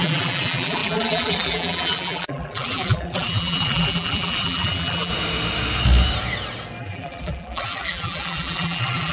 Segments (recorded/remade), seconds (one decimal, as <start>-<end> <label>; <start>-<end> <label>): 0.0-5.1 remade; 5.1-6.8 recorded; 6.8-9.1 remade